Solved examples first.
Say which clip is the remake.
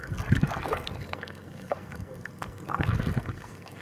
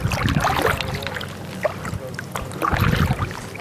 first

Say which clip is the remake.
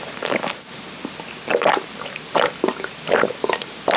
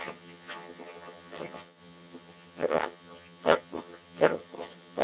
second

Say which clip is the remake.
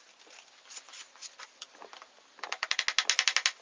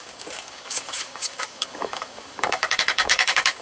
second